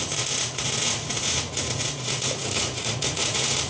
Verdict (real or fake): fake